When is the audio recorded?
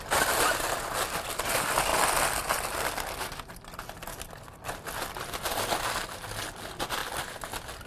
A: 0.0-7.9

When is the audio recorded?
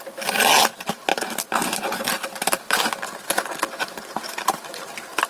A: 0.0-5.3